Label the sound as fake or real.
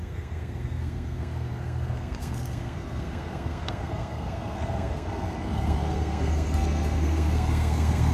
fake